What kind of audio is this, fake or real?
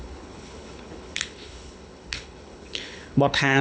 fake